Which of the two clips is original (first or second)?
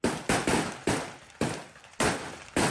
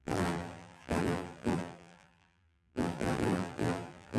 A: first